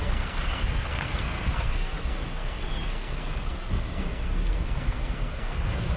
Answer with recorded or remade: remade